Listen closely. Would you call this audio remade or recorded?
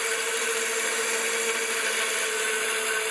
recorded